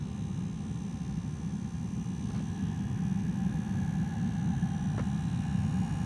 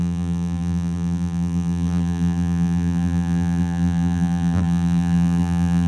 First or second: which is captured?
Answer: first